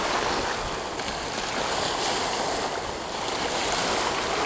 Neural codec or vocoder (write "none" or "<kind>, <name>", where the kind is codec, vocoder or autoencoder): none